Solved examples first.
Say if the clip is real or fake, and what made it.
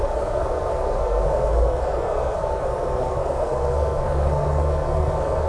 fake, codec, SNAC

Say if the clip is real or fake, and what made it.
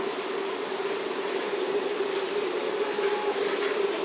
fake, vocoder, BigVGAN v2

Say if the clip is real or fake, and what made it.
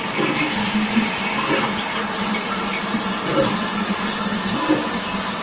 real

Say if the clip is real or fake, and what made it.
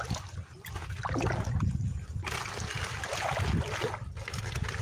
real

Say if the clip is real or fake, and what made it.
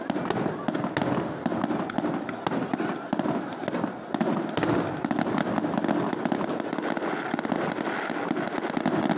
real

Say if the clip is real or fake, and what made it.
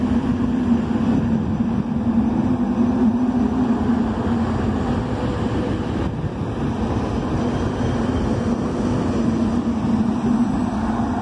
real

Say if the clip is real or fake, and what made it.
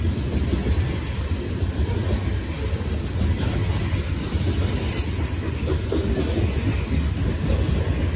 real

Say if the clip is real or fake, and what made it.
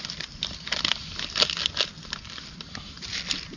real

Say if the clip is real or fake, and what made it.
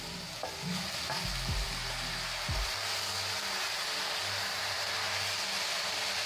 real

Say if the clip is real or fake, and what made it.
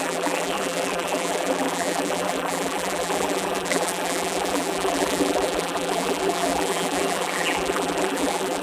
fake, vocoder, BigVGAN v2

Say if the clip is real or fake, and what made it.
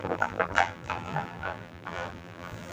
fake, vocoder, BigVGAN v2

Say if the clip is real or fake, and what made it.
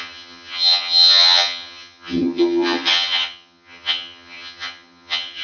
fake, vocoder, HiFi-GAN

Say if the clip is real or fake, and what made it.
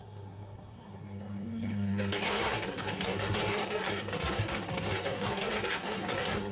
fake, codec, SNAC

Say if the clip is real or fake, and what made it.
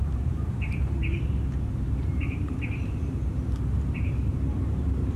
fake, vocoder, BigVGAN v2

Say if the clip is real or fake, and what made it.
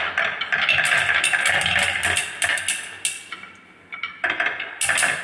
real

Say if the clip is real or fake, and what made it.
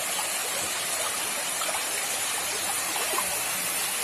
real